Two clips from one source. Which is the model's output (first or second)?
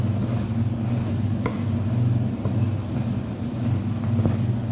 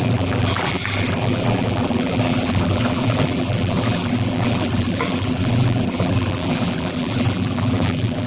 second